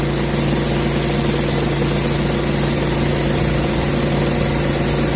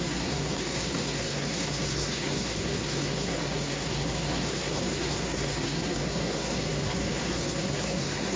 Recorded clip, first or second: first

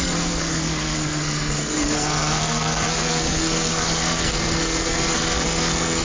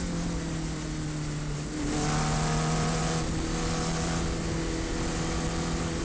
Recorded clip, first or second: second